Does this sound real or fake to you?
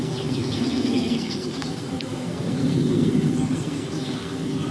fake